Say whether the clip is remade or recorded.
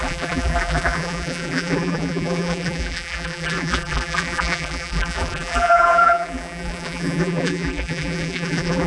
remade